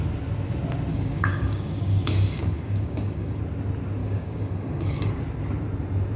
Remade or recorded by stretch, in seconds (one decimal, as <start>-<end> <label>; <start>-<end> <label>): 0.0-0.9 recorded; 0.9-3.4 remade; 3.4-4.0 recorded; 4.0-5.1 remade; 5.1-6.2 recorded